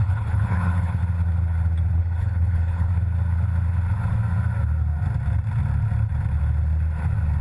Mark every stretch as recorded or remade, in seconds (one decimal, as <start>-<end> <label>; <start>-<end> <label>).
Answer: 0.0-1.0 remade; 1.0-2.0 recorded; 2.0-2.9 remade; 2.9-7.4 recorded